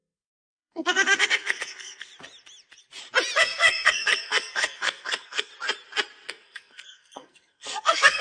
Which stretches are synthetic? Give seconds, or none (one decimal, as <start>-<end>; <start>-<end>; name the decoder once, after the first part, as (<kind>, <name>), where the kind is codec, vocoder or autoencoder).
0.0-2.1 (codec, SNAC); 3.4-5.5; 6.3-8.2